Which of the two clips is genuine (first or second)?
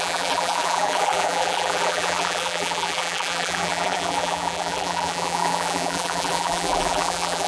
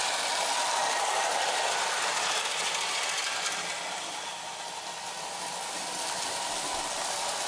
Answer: second